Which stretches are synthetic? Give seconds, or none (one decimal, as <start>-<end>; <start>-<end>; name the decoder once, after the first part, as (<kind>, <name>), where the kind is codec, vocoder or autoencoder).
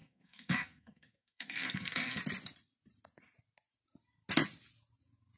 0.0-2.2 (codec, SNAC)